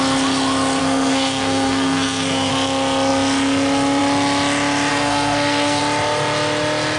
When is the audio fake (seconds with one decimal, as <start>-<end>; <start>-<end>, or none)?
0.8-2.5; 4.9-5.8